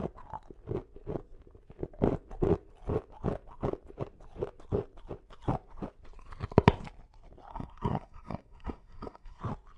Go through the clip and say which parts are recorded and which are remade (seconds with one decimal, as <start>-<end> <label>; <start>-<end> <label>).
0.0-7.5 recorded; 7.5-9.4 remade; 9.4-9.8 recorded